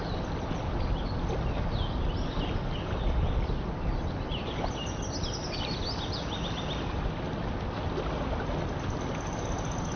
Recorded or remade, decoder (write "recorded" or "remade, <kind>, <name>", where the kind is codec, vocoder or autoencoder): recorded